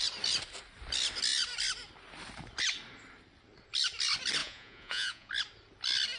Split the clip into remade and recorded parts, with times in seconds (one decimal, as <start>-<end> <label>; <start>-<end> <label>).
0.0-4.4 recorded; 4.4-5.3 remade; 5.3-6.2 recorded